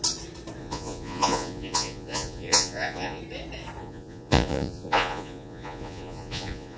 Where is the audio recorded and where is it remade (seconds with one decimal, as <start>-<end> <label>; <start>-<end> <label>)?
0.0-0.6 recorded; 0.6-3.2 remade; 3.2-3.8 recorded; 3.8-6.8 remade